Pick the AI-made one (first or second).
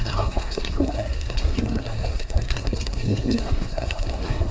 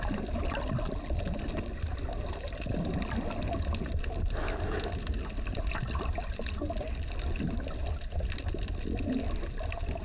first